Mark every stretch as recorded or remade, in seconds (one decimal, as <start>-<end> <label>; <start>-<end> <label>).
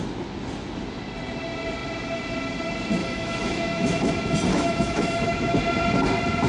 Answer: 0.0-3.0 recorded; 3.0-4.1 remade; 4.1-4.5 recorded; 4.5-5.6 remade; 5.6-6.5 recorded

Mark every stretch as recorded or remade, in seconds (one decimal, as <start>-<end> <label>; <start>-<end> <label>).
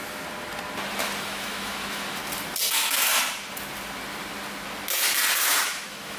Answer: 0.0-1.2 recorded; 1.2-2.2 remade; 2.2-2.7 recorded; 2.7-3.1 remade; 3.1-5.4 recorded; 5.4-6.2 remade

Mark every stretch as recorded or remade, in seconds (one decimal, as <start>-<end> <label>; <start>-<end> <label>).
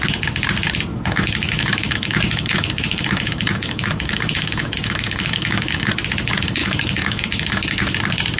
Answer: 0.0-0.9 recorded; 0.9-5.9 remade; 5.9-6.6 recorded; 6.6-7.9 remade; 7.9-8.4 recorded